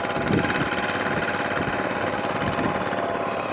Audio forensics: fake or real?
real